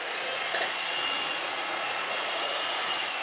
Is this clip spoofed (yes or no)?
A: yes